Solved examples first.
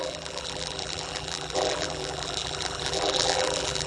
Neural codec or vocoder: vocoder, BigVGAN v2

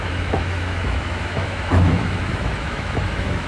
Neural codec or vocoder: autoencoder, DAC-VAE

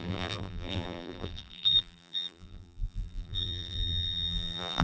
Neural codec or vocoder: vocoder, BigVGAN v2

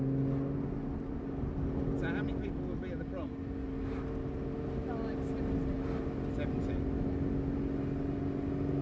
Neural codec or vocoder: none